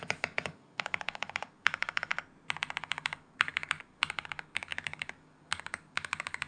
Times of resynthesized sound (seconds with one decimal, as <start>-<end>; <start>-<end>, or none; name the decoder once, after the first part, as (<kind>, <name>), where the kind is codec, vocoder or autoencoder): 0.0-2.1 (codec, DAC); 2.8-6.5